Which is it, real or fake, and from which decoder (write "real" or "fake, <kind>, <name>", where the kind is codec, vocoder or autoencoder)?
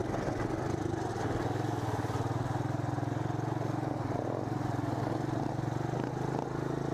real